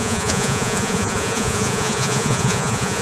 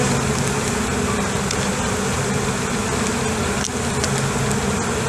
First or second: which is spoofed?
first